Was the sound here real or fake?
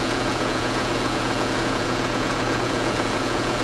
fake